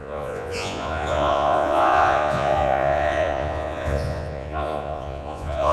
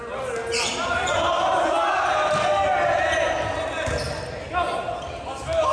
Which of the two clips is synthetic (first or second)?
first